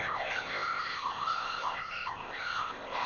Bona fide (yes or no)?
no